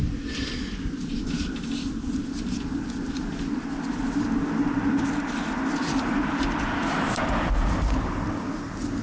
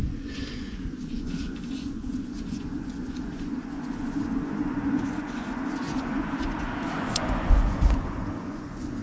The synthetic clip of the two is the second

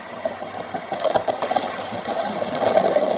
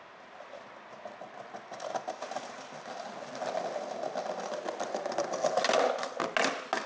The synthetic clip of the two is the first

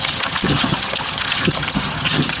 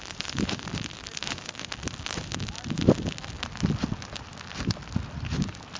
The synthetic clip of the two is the first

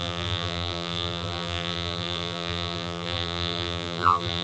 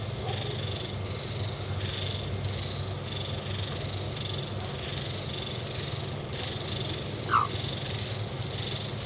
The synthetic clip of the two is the first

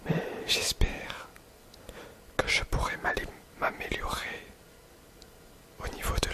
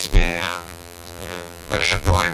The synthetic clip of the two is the second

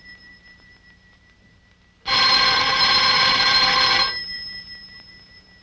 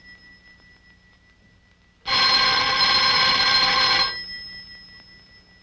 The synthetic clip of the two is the first